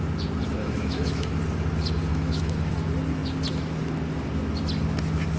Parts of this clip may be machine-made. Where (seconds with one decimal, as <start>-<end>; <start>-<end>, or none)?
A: 0.6-1.3; 2.1-2.7